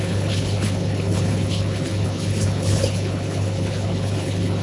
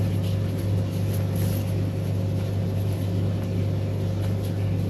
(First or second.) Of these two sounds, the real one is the second